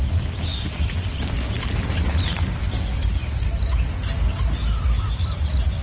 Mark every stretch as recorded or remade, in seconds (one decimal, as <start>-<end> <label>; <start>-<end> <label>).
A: 0.0-5.8 recorded